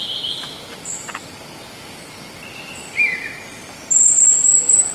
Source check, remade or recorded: recorded